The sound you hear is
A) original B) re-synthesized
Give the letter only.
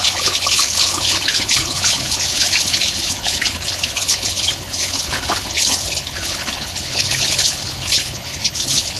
B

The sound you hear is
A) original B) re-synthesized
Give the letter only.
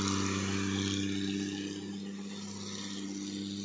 A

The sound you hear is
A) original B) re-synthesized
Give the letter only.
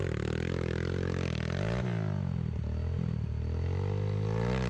A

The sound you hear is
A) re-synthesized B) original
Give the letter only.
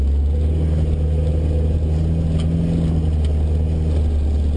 B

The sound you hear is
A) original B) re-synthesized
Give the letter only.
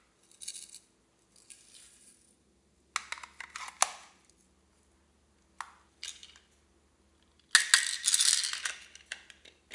A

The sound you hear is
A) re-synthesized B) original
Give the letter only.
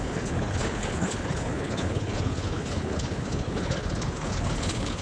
A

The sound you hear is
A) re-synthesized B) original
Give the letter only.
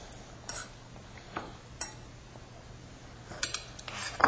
B